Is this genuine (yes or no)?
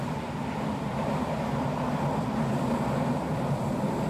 no